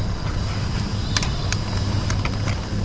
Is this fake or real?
real